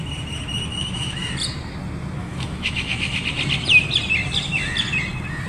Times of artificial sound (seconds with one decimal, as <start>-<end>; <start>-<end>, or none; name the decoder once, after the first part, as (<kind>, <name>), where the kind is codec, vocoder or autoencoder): 0.7-1.3 (autoencoder, DAC-VAE); 2.2-3.2